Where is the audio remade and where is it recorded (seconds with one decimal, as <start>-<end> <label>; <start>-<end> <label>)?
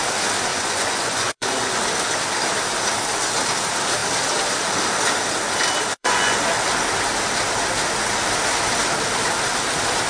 0.0-0.5 recorded; 0.5-1.8 remade; 1.8-5.9 recorded; 5.9-6.4 remade; 6.4-10.1 recorded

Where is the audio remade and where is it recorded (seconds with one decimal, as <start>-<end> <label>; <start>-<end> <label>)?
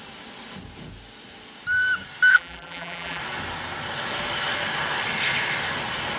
0.0-2.3 recorded; 2.3-3.2 remade; 3.2-6.2 recorded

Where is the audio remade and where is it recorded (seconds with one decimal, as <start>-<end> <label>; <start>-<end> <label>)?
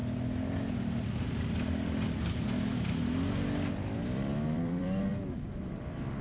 0.0-3.7 recorded; 3.7-5.1 remade; 5.1-5.8 recorded; 5.8-6.2 remade